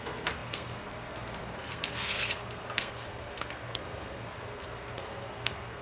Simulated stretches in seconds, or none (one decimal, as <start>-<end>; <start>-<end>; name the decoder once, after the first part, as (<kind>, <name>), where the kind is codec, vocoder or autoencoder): 0.0-5.8 (codec, SNAC)